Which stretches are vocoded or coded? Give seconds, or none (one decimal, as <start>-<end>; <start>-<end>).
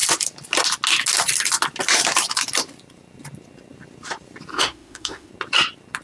4.5-5.3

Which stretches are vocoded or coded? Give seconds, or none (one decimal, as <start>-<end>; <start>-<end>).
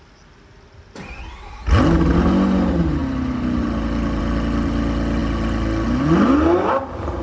none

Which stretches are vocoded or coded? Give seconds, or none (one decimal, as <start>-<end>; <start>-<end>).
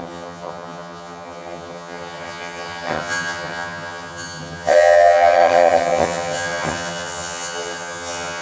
0.0-8.4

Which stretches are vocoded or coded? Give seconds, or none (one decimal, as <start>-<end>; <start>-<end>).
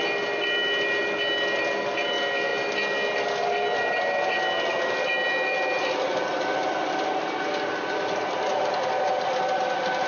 none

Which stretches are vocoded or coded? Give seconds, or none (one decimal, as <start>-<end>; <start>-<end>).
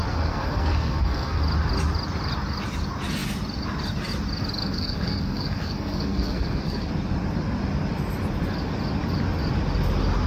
0.0-1.4; 4.6-6.9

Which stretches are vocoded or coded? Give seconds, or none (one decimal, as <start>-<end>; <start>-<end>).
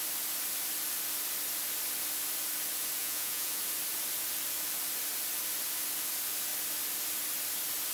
3.0-3.6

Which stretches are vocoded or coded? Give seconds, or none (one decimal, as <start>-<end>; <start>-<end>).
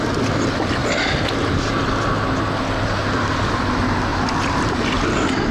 4.1-4.8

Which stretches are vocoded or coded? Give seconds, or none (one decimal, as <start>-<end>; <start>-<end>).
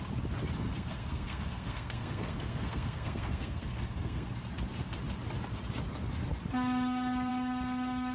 0.6-4.3